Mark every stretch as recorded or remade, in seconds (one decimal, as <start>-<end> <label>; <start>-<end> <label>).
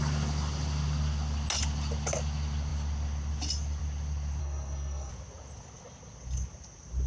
0.0-4.4 recorded; 4.4-5.1 remade; 5.1-7.1 recorded